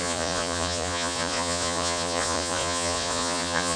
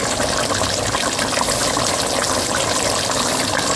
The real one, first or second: second